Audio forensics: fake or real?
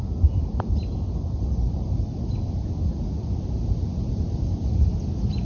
real